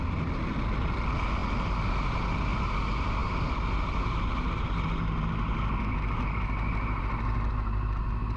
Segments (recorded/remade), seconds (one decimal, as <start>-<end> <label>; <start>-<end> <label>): 0.0-8.4 recorded